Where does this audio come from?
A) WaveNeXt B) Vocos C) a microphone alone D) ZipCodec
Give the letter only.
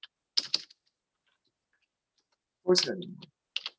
C